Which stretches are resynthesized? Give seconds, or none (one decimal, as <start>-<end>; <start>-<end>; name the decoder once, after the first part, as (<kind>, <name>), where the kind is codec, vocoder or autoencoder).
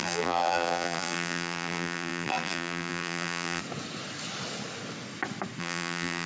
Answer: 0.0-3.6 (vocoder, BigVGAN v2); 5.6-6.3